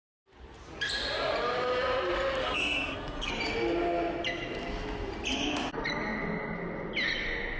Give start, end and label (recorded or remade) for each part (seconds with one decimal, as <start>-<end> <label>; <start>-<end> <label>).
0.0-2.4 recorded; 2.4-3.3 remade; 3.3-7.6 recorded